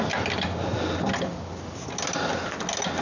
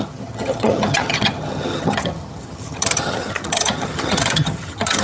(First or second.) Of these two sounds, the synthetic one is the second